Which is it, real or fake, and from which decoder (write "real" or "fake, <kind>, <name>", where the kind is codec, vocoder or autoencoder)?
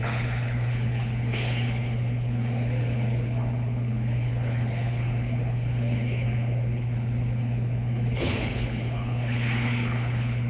fake, codec, HILCodec